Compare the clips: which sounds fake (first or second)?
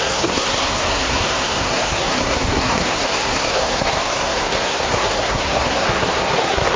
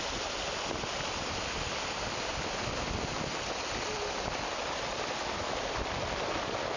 first